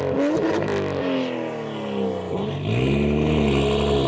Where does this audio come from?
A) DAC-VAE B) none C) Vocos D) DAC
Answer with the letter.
B